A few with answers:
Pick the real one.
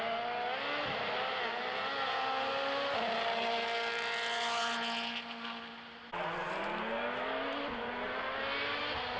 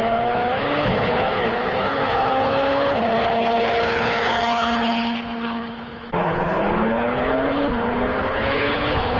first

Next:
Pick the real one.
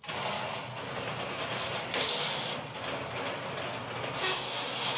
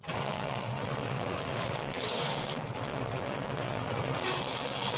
first